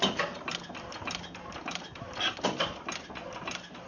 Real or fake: real